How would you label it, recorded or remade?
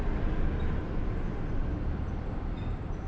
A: recorded